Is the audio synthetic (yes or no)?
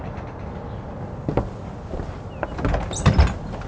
no